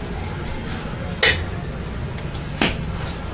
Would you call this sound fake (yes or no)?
no